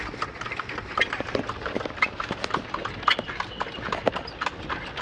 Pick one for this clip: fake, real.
real